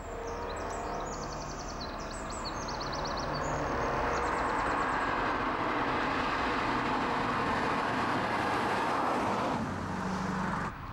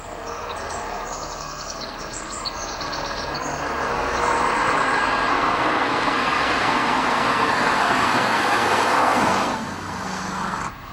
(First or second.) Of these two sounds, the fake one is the second